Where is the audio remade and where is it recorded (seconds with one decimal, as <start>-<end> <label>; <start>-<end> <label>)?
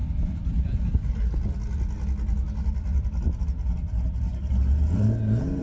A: 0.0-5.6 recorded